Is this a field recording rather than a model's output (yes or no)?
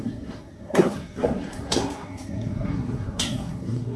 no